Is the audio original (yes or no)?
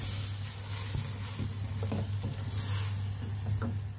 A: yes